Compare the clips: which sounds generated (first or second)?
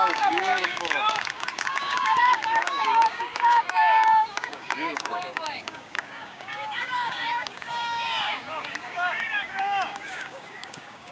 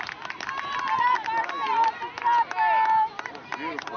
first